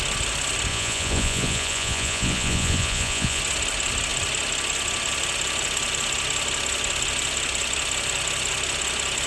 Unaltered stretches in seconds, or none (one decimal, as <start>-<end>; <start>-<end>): 0.0-0.7; 3.4-9.3